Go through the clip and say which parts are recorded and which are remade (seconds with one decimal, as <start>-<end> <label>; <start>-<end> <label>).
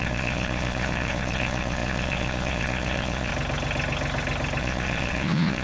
0.0-3.3 remade; 3.3-4.6 recorded; 4.6-5.6 remade